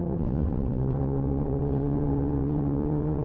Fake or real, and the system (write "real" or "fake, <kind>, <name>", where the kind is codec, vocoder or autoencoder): fake, vocoder, WaveNeXt